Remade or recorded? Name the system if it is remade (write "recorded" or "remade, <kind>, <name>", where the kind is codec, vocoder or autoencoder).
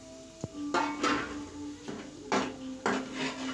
recorded